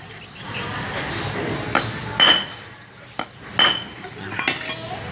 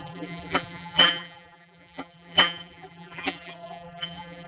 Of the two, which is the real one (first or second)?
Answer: first